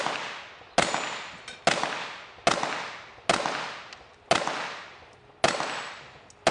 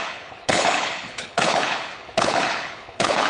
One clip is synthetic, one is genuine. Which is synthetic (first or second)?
second